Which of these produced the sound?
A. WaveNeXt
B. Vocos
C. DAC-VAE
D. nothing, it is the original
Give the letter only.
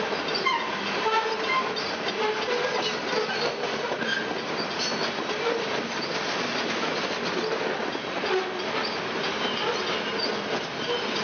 D